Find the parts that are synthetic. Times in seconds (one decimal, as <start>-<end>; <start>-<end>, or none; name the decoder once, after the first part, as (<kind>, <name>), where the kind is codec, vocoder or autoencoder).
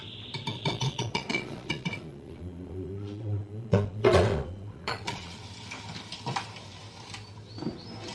0.5-5.4 (vocoder, Vocos)